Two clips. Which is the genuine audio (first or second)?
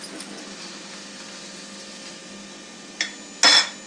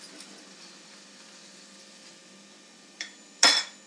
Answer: first